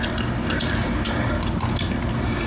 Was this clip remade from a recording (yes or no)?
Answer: no